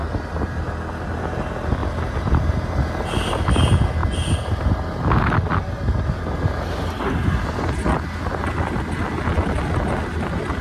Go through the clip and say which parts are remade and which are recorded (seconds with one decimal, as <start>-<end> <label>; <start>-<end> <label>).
0.0-1.8 recorded; 1.8-2.5 remade; 2.5-10.6 recorded